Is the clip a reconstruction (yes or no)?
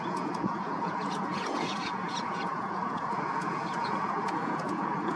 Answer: yes